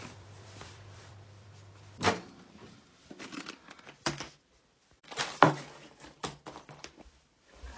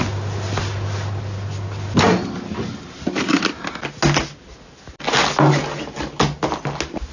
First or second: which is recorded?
second